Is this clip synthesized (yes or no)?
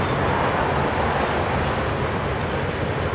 no